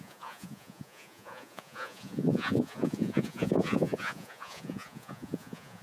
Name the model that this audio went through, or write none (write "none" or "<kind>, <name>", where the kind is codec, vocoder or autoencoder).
vocoder, Vocos